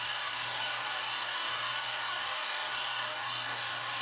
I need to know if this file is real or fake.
fake